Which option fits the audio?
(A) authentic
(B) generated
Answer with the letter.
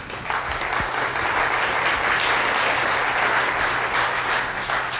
A